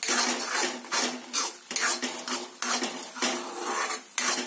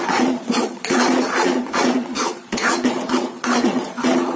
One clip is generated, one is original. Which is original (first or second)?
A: first